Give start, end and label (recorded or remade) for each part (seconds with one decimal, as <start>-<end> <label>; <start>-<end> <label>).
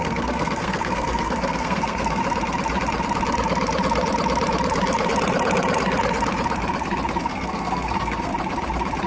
0.0-2.2 remade; 2.2-7.2 recorded; 7.2-8.3 remade; 8.3-9.1 recorded